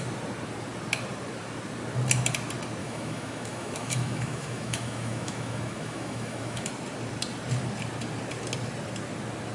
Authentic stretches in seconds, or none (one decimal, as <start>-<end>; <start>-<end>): 0.0-2.8; 6.7-9.5